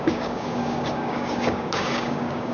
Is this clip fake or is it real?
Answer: fake